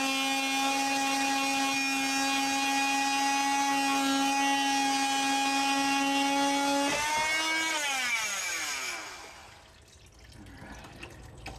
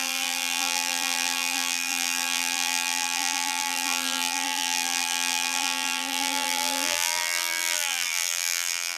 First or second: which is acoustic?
first